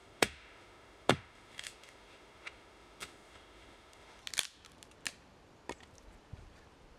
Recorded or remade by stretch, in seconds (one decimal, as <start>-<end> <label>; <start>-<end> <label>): 0.0-4.2 remade; 4.2-7.0 recorded